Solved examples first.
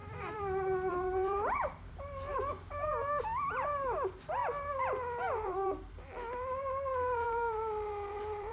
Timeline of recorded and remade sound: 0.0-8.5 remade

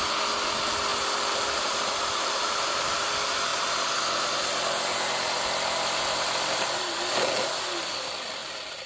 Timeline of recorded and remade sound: 0.0-0.9 recorded; 0.9-3.1 remade; 3.1-8.4 recorded; 8.4-8.9 remade

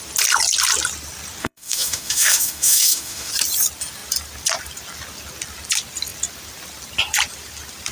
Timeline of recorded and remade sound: 0.0-1.4 recorded; 1.4-3.3 remade; 3.3-7.9 recorded